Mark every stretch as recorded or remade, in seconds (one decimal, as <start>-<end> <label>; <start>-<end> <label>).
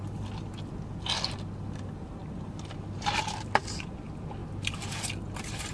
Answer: 0.0-4.4 recorded; 4.4-5.0 remade; 5.0-5.7 recorded